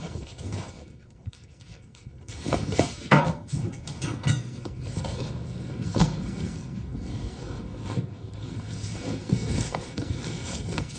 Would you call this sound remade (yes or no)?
yes